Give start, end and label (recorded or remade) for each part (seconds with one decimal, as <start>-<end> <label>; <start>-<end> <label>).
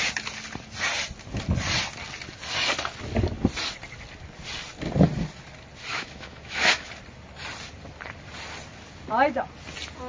0.0-5.9 recorded; 5.9-6.9 remade; 6.9-10.1 recorded